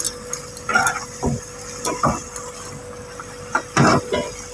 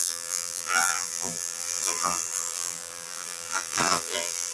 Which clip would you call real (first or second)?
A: first